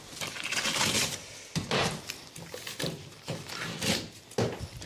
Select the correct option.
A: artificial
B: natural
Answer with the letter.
B